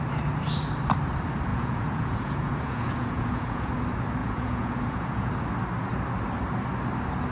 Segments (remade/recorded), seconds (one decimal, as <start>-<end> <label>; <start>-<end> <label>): 0.0-1.5 recorded; 1.5-3.7 remade; 3.7-4.2 recorded; 4.2-5.3 remade; 5.3-7.3 recorded